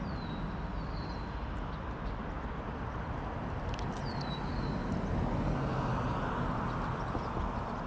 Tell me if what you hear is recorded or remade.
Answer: recorded